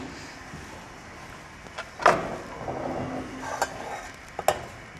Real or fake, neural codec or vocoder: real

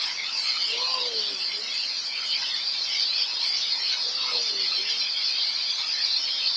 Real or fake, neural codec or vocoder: real